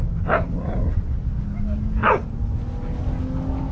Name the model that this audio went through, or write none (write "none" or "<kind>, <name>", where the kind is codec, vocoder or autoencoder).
none